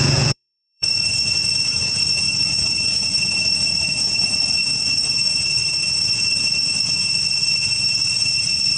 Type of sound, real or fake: fake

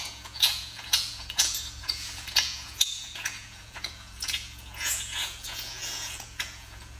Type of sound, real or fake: fake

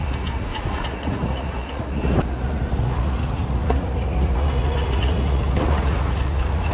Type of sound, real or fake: fake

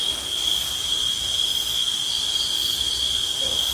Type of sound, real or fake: real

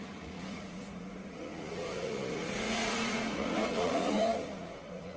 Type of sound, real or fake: fake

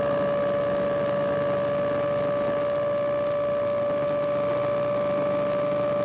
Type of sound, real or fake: real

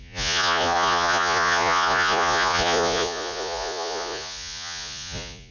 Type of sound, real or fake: fake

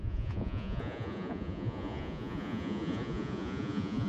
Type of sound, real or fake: fake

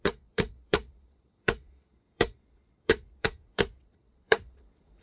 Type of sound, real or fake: fake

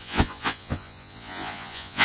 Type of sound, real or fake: fake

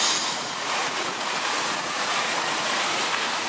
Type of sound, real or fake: fake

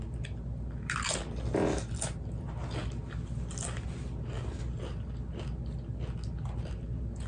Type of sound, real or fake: real